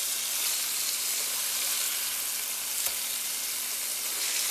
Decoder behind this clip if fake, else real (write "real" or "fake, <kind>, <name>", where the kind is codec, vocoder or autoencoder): real